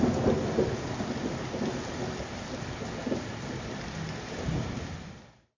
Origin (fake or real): real